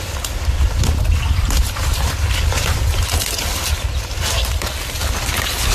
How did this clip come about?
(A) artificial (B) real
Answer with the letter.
A